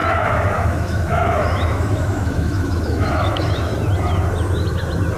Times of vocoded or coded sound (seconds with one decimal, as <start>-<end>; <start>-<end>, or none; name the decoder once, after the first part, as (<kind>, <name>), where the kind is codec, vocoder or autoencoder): 0.0-3.7 (autoencoder, DAC-VAE)